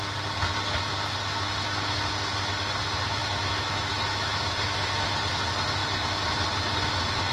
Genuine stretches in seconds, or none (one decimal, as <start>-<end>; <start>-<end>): 0.0-3.2; 4.5-7.3

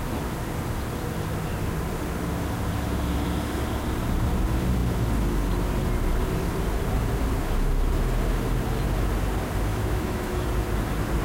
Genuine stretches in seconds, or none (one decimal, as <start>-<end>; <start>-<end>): 0.0-9.7; 10.5-11.2

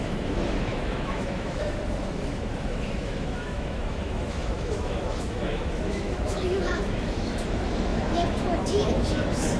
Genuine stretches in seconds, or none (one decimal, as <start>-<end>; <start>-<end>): none

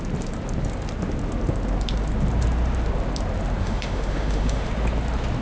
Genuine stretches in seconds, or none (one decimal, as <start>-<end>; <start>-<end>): 0.0-3.6; 4.7-5.4

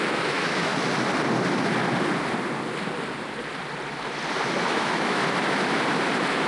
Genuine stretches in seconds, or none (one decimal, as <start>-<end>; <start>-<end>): 0.7-4.6; 5.2-6.5

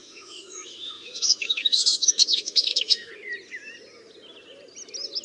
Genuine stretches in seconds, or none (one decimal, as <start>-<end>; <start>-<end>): 3.1-5.2

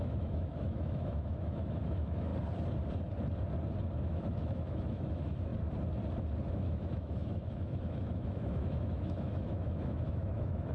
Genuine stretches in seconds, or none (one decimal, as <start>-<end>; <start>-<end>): 2.3-4.0; 5.5-6.5